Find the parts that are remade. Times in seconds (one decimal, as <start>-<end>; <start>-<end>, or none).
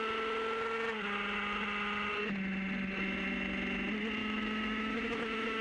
4.2-5.6